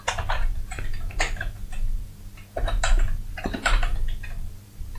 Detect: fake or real fake